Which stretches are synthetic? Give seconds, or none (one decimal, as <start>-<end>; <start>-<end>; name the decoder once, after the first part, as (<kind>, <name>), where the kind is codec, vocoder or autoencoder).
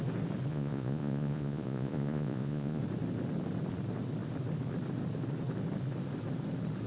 0.5-2.8 (vocoder, Vocos)